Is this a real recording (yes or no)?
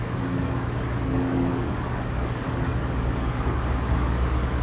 no